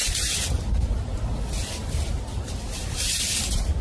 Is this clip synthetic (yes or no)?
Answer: no